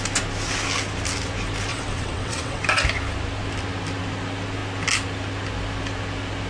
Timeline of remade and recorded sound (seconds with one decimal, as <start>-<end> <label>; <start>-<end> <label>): 0.0-1.7 recorded; 1.7-2.6 remade; 2.6-6.5 recorded